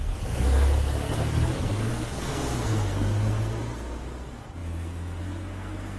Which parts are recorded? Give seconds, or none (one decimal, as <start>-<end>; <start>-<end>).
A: none